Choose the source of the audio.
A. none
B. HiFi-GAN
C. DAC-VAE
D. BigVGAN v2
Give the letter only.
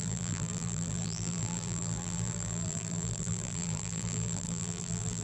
D